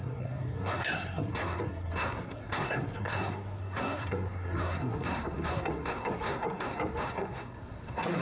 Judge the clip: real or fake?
fake